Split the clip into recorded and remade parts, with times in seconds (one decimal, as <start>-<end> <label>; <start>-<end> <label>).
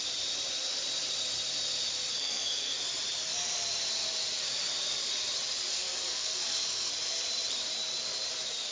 0.0-2.1 recorded; 2.1-2.8 remade; 2.8-5.7 recorded; 5.7-6.9 remade; 6.9-8.7 recorded